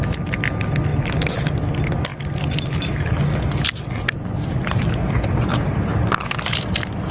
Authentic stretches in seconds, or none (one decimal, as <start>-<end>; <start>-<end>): 0.0-7.1